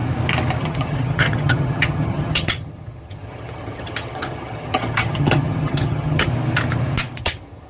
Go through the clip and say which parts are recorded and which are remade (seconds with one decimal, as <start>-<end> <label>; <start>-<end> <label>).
0.0-0.6 recorded; 0.6-6.3 remade; 6.3-7.2 recorded; 7.2-7.7 remade